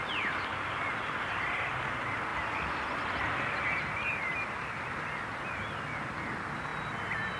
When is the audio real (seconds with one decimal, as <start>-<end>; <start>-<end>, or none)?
4.3-6.1